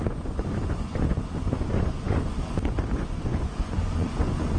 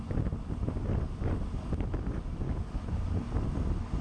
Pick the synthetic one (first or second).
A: first